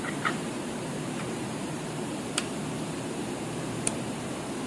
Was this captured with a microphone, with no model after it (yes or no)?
no